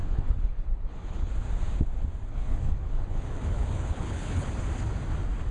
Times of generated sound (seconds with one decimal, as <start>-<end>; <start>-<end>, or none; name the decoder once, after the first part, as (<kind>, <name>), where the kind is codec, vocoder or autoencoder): 0.0-1.3 (codec, HILCodec); 2.3-4.5